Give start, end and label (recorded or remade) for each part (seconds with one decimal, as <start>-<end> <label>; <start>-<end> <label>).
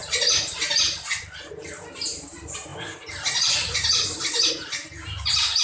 0.0-1.2 recorded; 1.2-5.6 remade